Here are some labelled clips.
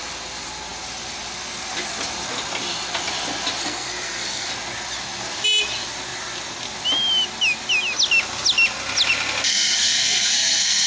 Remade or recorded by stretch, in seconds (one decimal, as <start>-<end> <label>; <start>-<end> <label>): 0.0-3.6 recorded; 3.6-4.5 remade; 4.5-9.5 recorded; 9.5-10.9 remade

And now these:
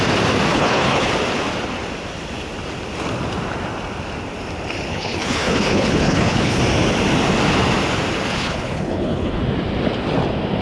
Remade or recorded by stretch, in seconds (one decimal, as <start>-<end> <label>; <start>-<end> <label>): 0.0-0.5 recorded; 0.5-1.1 remade; 1.1-4.9 recorded; 4.9-6.6 remade; 6.6-8.3 recorded; 8.3-9.4 remade; 9.4-10.6 recorded

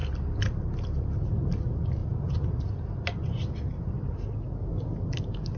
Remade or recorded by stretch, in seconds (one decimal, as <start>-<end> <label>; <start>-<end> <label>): 0.0-5.6 recorded